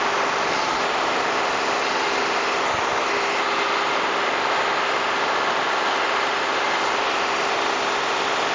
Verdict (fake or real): real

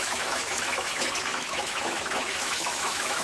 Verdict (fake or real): fake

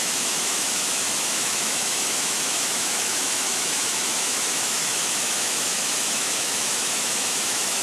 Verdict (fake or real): fake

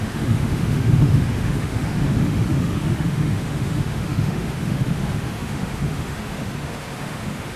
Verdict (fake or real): fake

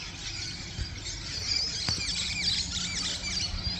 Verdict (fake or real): real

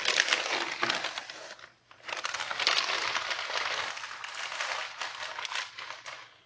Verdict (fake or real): real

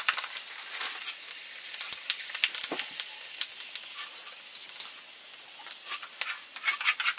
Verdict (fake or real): real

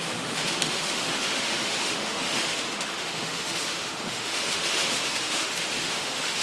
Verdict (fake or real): fake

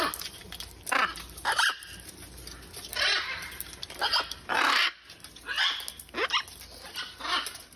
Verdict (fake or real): real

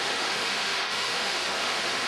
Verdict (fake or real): fake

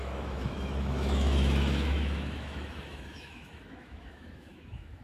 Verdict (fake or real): fake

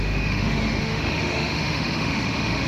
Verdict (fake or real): fake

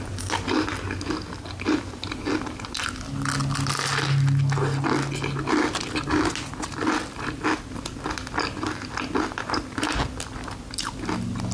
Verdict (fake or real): real